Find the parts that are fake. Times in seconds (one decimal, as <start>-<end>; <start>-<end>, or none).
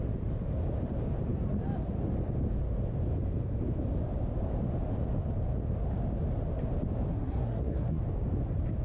7.1-8.0